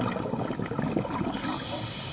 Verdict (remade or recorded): recorded